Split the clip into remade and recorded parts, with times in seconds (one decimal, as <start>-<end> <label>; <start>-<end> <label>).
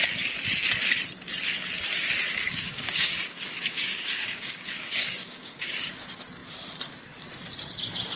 0.0-2.5 recorded; 2.5-5.9 remade; 5.9-8.2 recorded